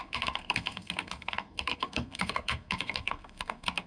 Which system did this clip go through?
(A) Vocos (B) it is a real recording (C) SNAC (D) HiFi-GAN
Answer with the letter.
C